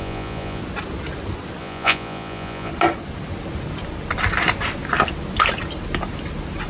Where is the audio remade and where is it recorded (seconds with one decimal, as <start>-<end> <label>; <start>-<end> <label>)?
0.0-0.6 remade; 0.6-1.6 recorded; 1.6-2.7 remade; 2.7-6.7 recorded